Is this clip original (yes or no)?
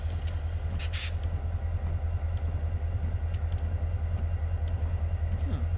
yes